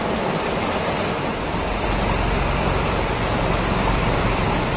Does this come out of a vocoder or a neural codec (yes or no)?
yes